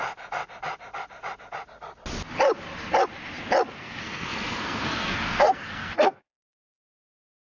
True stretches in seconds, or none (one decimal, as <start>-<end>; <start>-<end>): 0.0-3.8